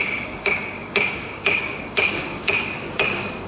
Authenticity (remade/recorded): remade